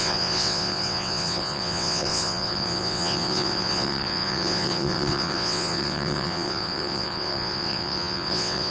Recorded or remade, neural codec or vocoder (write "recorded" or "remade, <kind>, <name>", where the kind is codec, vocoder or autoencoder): remade, vocoder, WaveNeXt